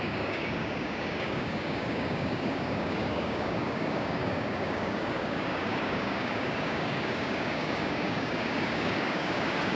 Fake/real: fake